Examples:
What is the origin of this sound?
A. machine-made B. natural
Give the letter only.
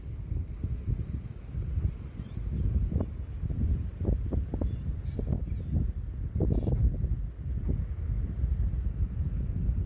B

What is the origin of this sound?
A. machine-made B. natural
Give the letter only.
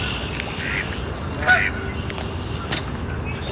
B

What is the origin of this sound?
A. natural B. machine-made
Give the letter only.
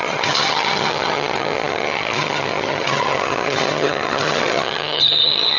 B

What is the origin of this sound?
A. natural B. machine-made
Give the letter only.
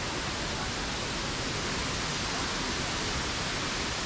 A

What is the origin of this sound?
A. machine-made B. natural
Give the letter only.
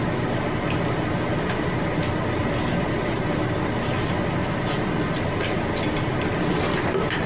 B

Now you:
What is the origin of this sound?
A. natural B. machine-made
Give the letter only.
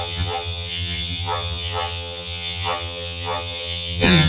B